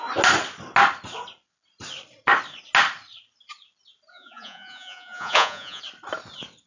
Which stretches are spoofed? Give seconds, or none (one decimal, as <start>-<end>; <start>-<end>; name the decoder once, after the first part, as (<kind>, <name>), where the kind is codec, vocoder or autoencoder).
4.1-5.8 (vocoder, Vocos)